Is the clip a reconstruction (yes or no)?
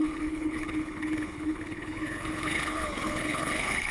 yes